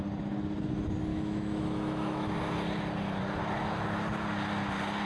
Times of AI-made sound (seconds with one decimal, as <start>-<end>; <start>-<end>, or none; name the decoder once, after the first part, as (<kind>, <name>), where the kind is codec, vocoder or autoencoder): 1.1-2.3 (autoencoder, DAC-VAE)